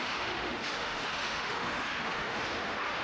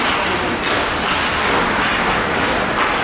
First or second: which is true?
second